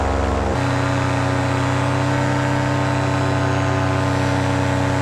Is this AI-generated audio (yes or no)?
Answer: no